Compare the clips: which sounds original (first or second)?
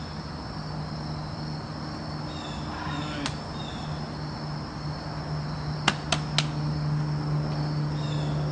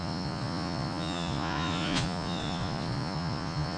first